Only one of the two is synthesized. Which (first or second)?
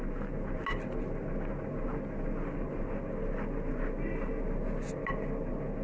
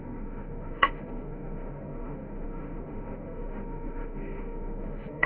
second